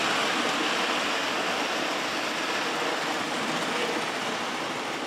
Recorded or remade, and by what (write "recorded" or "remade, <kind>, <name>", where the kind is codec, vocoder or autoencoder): recorded